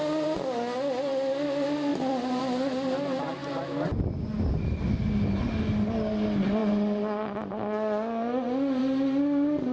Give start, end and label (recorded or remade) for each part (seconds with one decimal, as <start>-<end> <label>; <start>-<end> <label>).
0.0-9.7 recorded